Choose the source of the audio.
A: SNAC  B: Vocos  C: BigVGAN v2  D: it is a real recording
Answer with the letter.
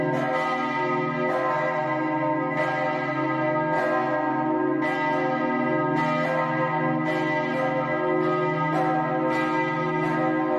D